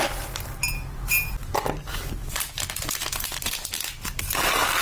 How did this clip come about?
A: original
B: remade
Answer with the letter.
A